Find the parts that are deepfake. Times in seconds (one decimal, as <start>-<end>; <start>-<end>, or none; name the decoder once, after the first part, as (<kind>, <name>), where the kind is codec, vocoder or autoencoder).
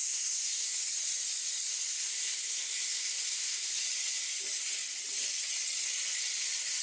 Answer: 0.0-0.8 (codec, SNAC); 1.7-3.8